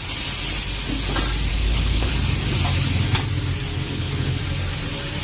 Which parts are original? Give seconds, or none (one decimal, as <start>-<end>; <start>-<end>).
0.0-1.5; 2.1-3.7; 4.4-5.2